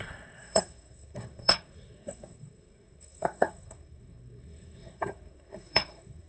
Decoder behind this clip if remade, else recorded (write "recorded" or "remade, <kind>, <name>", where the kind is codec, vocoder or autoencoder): remade, codec, SNAC